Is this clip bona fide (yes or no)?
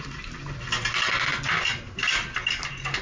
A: yes